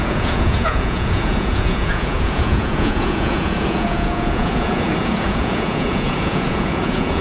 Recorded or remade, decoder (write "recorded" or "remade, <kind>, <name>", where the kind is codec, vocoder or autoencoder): remade, vocoder, Vocos